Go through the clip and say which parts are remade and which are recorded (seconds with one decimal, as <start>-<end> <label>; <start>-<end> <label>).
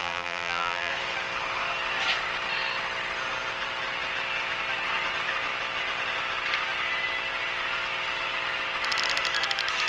0.0-0.9 remade; 0.9-9.9 recorded